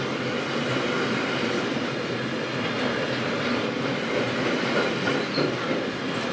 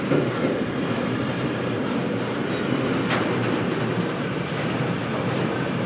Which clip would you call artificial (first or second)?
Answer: second